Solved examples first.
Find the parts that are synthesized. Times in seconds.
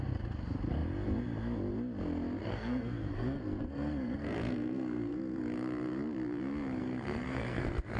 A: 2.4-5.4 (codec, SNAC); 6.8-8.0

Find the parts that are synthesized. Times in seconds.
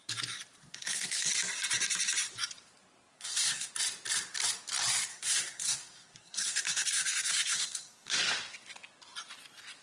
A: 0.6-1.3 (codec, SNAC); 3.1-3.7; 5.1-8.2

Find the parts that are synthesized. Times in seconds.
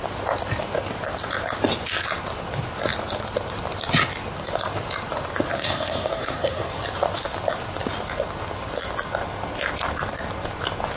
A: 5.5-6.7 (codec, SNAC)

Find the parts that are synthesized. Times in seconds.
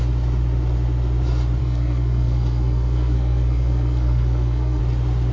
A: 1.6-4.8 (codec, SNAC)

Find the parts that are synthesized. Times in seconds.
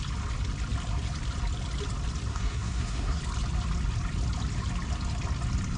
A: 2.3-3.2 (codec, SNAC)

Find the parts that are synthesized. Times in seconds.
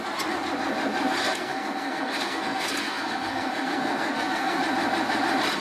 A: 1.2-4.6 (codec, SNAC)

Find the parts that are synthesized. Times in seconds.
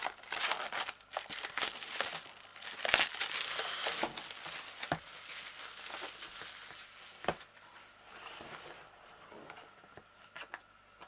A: none